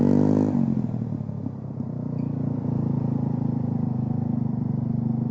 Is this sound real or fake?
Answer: real